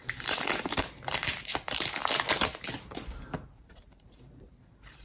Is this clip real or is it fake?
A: fake